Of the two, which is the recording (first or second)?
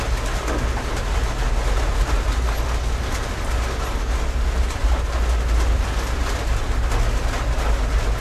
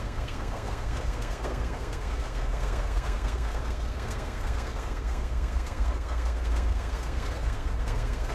first